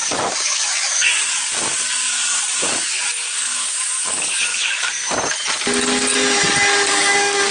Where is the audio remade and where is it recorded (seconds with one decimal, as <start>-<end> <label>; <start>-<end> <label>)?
0.0-5.0 remade; 5.0-6.9 recorded; 6.9-7.5 remade